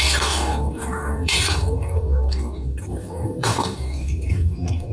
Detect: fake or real fake